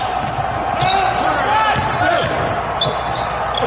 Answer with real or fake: real